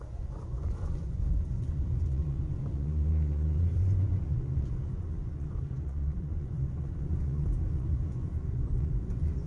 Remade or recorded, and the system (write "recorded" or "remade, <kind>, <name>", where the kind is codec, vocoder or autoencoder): remade, vocoder, Vocos